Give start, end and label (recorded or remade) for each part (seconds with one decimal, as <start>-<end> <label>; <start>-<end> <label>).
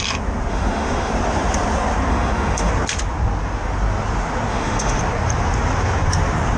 0.0-0.5 recorded; 0.5-1.1 remade; 1.1-2.1 recorded; 2.1-2.7 remade; 2.7-4.5 recorded; 4.5-5.0 remade; 5.0-6.6 recorded